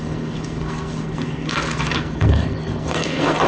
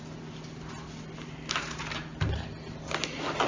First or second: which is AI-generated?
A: first